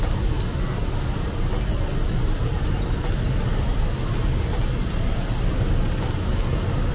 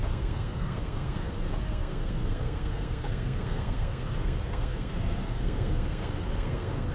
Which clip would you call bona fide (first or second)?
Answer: first